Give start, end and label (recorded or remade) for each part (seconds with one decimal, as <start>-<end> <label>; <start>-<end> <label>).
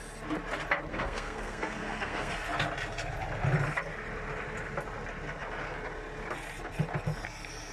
0.0-0.9 recorded; 0.9-2.3 remade; 2.3-7.7 recorded